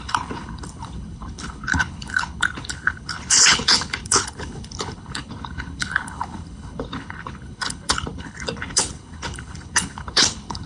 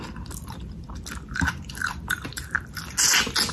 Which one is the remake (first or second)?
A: first